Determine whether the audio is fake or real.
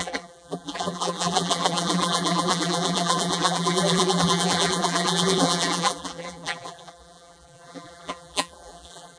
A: fake